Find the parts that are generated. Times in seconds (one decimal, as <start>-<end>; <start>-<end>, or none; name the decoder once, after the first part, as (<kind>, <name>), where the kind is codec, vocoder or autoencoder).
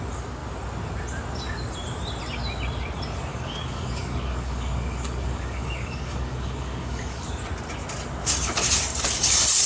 3.3-7.3 (codec, DAC)